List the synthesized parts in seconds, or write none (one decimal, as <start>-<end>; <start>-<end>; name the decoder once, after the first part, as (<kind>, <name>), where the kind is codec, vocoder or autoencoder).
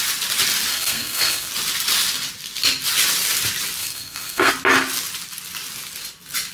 0.7-1.5 (codec, SNAC); 3.8-4.5